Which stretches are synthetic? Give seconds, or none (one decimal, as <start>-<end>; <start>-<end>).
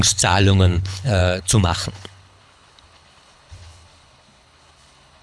0.0-5.2